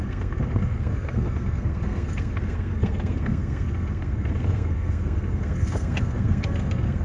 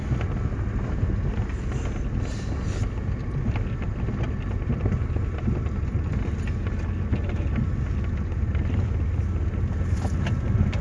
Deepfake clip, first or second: first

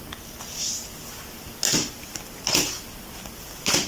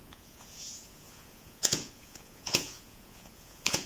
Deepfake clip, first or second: second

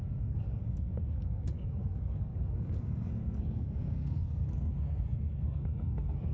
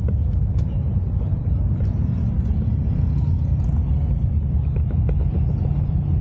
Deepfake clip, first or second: first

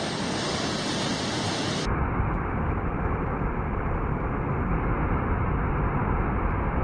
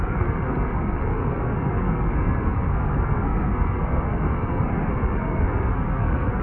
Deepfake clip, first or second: second